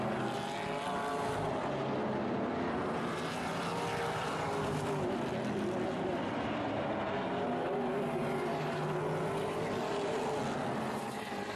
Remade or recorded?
recorded